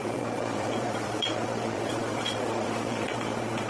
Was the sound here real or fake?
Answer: fake